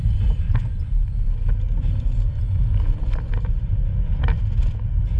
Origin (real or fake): fake